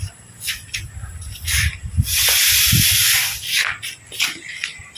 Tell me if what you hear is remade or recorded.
recorded